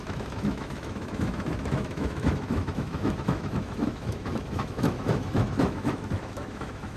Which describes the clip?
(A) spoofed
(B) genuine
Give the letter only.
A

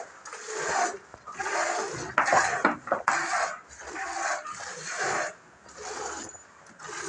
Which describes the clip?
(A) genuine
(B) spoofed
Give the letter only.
A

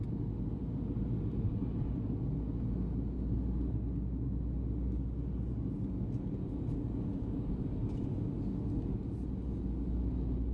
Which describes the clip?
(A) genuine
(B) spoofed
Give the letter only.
A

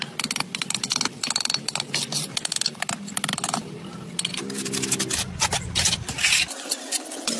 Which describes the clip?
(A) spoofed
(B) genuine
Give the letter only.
B